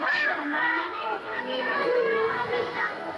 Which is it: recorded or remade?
remade